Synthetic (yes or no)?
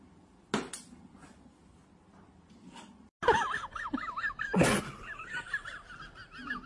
no